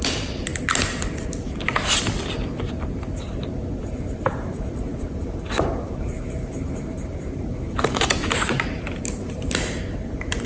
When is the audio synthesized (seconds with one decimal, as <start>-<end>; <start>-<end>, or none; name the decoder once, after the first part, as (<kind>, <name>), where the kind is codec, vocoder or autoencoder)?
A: 0.0-0.5 (vocoder, BigVGAN v2); 3.8-10.5